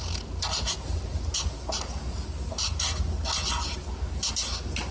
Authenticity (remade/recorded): recorded